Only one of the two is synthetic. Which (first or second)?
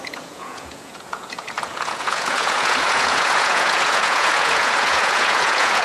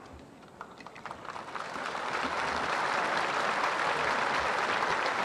first